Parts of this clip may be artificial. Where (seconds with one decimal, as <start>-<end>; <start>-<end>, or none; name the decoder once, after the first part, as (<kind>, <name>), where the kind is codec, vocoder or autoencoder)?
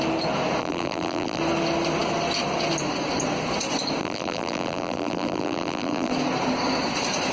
0.6-1.4 (vocoder, BigVGAN v2); 4.0-6.1